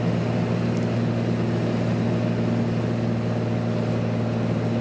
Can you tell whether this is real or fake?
real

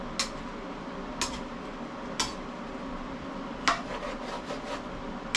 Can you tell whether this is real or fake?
real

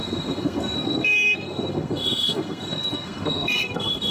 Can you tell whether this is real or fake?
fake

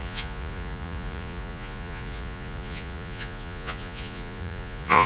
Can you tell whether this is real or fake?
fake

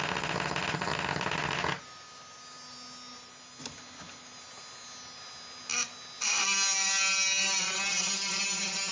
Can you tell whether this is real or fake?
real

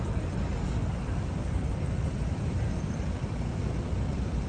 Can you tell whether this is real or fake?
real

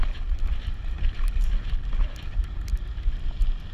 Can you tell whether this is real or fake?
real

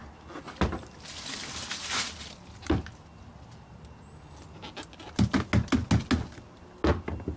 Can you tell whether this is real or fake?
real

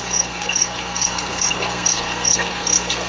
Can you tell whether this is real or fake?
fake